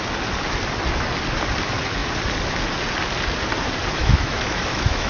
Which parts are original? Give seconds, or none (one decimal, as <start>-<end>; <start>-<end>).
0.0-4.0